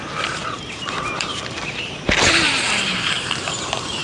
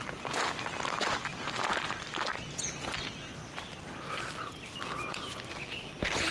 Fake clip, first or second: first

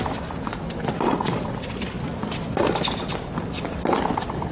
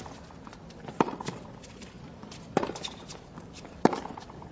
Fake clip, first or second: second